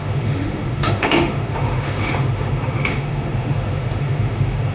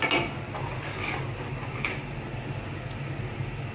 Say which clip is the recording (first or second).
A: second